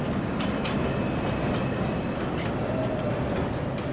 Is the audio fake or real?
real